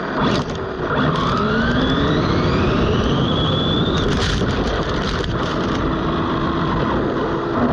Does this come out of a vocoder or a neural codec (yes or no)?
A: yes